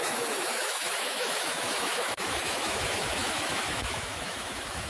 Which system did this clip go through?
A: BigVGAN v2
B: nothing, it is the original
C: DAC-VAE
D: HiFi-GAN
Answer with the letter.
C